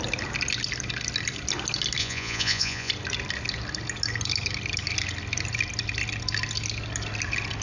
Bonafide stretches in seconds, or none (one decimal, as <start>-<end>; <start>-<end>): 0.0-2.0; 2.9-7.6